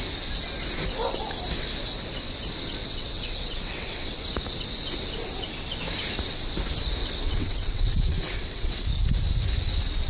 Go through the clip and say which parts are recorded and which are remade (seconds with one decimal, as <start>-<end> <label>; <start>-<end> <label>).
0.0-2.8 recorded; 2.8-4.2 remade; 4.2-7.0 recorded; 7.0-8.9 remade; 8.9-10.1 recorded